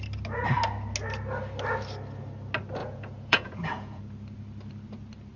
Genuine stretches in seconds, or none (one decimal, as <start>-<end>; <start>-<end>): 0.0-2.8; 4.0-5.4